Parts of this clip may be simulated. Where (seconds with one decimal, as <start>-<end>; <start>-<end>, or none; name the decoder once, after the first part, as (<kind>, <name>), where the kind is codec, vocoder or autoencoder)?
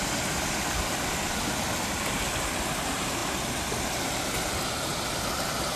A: none